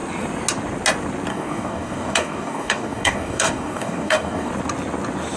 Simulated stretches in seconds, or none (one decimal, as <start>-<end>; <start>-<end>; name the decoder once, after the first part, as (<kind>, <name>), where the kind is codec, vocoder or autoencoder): 1.3-4.5 (codec, DAC)